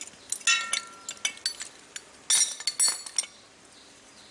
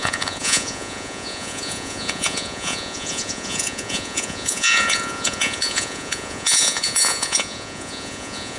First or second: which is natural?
first